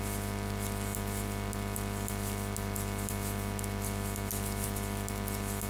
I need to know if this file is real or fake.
real